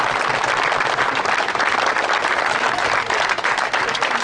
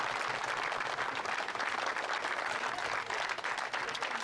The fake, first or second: first